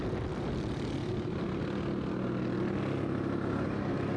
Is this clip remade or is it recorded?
recorded